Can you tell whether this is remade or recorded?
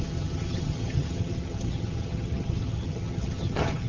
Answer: remade